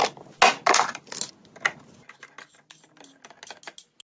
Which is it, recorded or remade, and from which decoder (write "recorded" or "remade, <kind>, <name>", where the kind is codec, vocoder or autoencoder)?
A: recorded